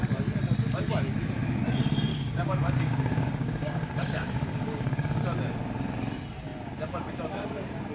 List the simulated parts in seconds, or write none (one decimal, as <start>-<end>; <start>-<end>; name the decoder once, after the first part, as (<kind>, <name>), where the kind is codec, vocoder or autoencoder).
2.1-5.2 (codec, DAC)

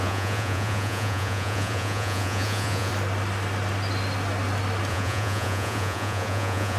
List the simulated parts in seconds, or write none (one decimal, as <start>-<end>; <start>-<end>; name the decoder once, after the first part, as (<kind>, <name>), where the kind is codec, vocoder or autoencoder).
0.0-2.9 (vocoder, Vocos); 4.9-6.8